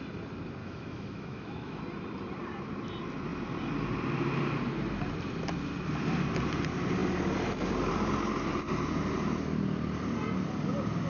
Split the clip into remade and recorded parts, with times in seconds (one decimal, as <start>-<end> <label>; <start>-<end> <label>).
0.0-0.6 recorded; 0.6-1.8 remade; 1.8-11.1 recorded